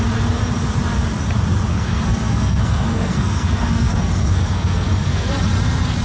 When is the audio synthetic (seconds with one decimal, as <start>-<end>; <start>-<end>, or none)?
1.7-5.3